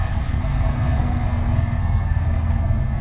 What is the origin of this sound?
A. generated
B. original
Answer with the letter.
A